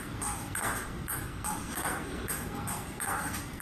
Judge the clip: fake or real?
fake